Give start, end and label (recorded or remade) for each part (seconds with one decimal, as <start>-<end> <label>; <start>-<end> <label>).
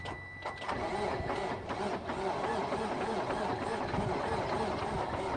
0.0-5.4 recorded